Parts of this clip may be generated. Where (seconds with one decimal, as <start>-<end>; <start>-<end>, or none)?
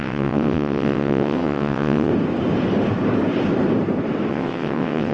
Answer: 0.0-2.1; 4.3-5.1